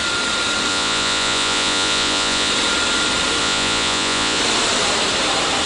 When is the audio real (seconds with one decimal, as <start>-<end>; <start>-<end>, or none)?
0.0-0.7; 2.5-3.4; 4.4-5.7